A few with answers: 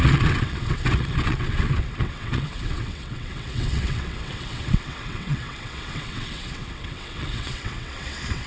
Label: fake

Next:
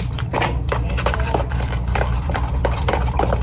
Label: fake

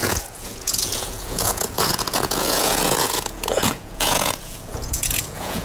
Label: fake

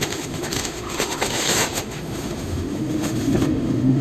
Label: fake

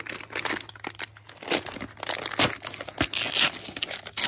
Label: real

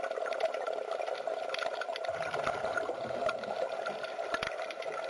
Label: real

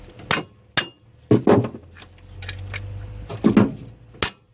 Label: real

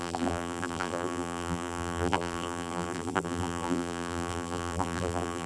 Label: fake